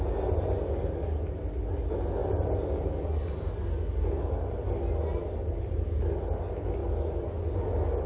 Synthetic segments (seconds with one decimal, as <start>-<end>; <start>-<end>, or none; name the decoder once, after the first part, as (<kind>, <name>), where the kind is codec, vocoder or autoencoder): none